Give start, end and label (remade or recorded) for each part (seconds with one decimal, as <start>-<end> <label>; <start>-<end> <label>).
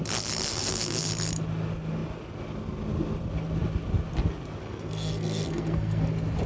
0.0-0.5 recorded; 0.5-1.1 remade; 1.1-4.6 recorded; 4.6-6.1 remade; 6.1-6.5 recorded